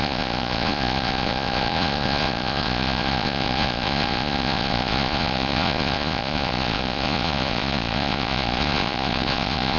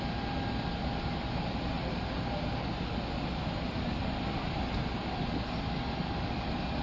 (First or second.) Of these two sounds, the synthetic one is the first